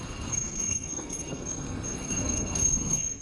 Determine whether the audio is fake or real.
fake